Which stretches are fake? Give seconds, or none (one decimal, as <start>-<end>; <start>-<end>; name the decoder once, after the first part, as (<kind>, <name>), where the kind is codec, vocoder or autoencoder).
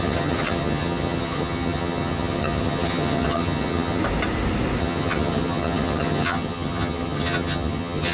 0.0-4.0 (vocoder, HiFi-GAN); 4.8-8.1